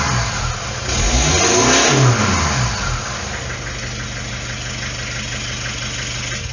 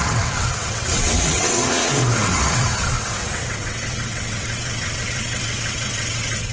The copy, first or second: second